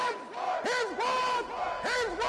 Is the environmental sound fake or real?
real